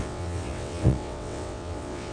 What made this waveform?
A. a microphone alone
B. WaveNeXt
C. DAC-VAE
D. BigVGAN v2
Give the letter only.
B